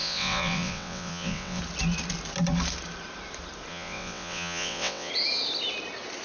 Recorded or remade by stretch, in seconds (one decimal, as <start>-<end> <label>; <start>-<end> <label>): 0.0-1.6 remade; 1.6-3.7 recorded; 3.7-5.1 remade; 5.1-6.2 recorded